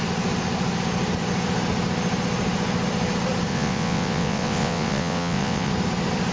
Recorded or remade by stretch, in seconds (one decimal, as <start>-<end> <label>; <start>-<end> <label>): 0.0-3.5 recorded; 3.5-5.7 remade; 5.7-6.3 recorded